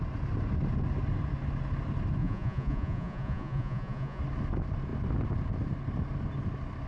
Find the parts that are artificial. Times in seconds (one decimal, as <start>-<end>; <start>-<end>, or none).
2.2-4.2